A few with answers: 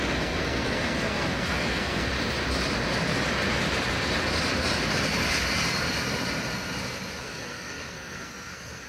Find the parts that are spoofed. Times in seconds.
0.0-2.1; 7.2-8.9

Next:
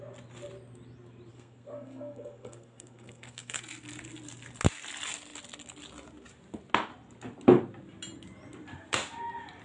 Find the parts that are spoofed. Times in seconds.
1.3-3.6

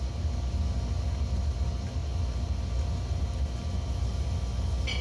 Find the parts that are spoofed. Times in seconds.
none

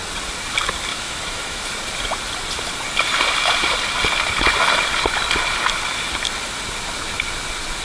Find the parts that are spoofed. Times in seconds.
0.9-1.6

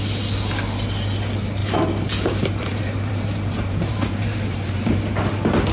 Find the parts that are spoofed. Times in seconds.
1.6-5.0

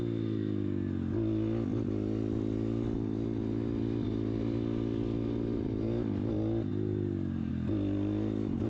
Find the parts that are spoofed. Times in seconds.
6.7-7.5

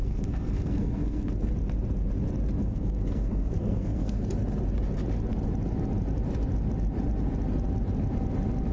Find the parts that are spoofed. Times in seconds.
0.0-1.5; 2.6-4.2